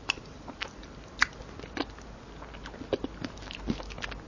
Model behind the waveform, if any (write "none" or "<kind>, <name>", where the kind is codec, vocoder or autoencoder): none